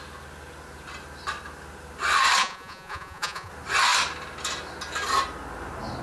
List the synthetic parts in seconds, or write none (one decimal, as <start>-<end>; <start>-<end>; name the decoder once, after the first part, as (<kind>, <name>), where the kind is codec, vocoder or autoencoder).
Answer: 2.4-3.5 (vocoder, Vocos)